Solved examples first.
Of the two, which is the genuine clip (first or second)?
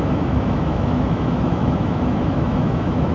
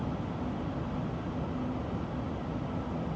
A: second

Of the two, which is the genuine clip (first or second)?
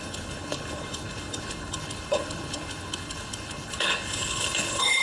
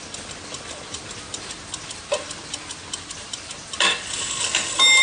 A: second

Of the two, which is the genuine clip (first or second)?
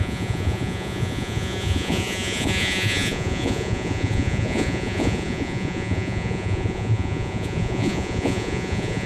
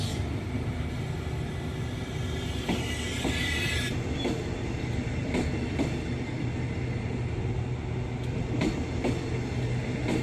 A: second